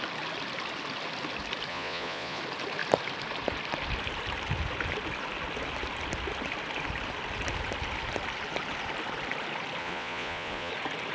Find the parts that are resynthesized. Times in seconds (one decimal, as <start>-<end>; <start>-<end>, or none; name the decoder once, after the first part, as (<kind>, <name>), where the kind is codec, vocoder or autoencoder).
1.7-2.4 (vocoder, Vocos); 9.8-10.7